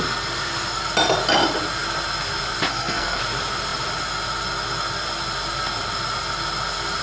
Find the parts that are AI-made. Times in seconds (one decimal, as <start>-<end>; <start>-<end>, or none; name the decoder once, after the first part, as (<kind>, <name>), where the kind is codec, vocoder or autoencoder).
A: 2.7-3.2 (codec, SNAC)